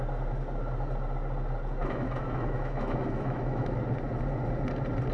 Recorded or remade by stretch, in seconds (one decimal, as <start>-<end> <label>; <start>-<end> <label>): 0.0-1.8 recorded; 1.8-3.8 remade; 3.8-5.1 recorded